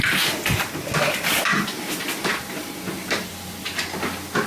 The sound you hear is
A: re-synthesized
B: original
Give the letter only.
B